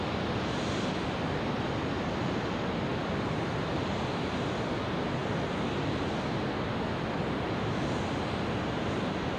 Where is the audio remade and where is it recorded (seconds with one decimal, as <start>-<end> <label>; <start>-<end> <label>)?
0.0-2.9 recorded; 2.9-4.8 remade; 4.8-9.4 recorded